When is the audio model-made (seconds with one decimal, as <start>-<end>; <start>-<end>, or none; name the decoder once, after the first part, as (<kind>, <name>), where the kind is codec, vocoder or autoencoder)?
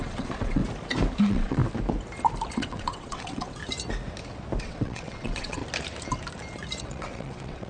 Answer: 0.0-0.6 (vocoder, WaveNeXt); 1.2-1.6; 2.5-3.6; 4.6-5.6; 6.8-7.7